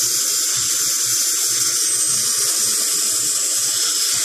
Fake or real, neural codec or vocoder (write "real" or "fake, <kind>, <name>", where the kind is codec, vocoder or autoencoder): real